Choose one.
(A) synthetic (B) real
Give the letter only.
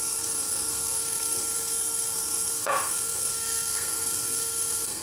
A